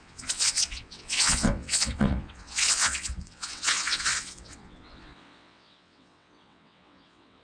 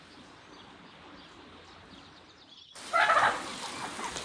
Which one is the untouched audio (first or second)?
second